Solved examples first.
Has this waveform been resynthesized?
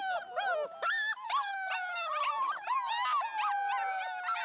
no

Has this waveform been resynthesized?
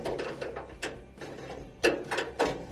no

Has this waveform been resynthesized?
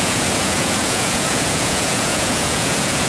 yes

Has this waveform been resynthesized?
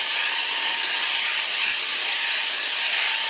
no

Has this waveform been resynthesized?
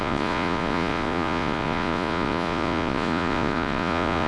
yes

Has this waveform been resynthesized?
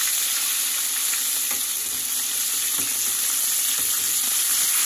no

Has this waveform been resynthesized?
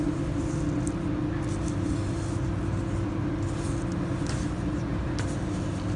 no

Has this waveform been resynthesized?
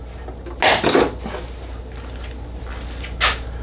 no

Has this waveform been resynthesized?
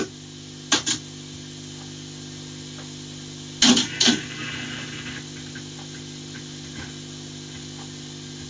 no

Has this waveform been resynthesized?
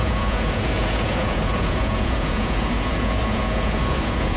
yes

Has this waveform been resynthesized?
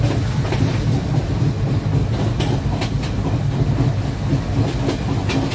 no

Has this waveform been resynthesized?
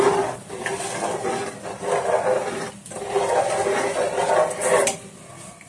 no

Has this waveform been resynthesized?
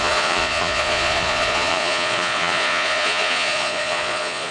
yes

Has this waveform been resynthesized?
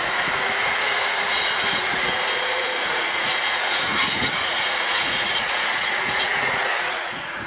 yes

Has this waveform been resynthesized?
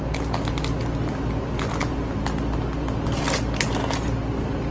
no